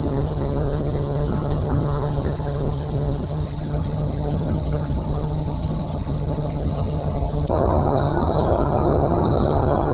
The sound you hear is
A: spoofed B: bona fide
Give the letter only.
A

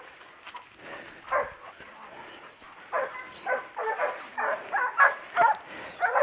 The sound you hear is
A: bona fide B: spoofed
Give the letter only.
A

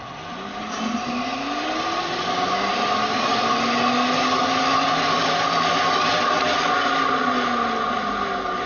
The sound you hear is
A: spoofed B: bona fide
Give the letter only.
B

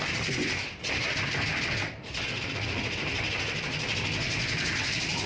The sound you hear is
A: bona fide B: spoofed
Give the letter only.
A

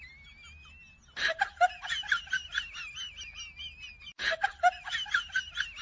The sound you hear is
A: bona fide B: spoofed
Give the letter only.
A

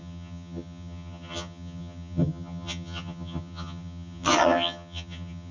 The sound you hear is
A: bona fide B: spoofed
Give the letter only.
B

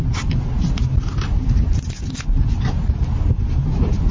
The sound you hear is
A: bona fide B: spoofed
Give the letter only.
A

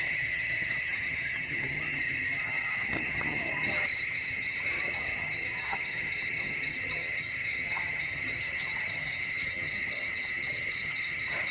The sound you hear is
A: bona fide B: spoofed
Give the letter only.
B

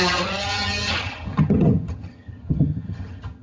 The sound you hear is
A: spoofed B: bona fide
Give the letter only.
A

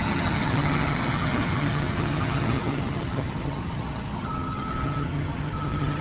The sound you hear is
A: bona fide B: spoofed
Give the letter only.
B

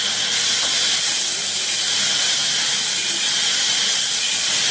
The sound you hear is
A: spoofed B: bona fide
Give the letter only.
B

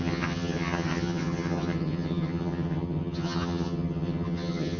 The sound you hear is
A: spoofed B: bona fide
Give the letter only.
A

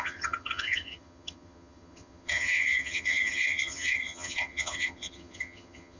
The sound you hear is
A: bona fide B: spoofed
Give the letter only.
B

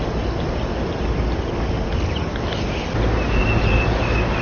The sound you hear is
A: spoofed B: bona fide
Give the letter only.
B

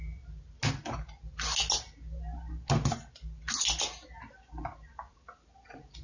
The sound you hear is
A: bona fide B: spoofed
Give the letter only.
A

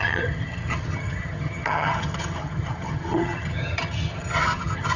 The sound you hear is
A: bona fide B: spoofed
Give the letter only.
B